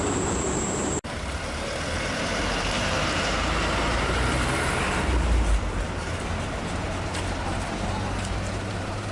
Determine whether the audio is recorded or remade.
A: remade